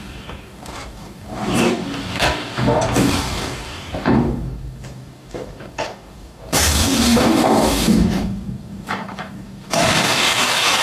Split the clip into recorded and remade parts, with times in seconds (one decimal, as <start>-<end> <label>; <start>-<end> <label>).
0.0-10.8 remade